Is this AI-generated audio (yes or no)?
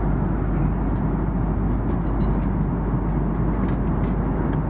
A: no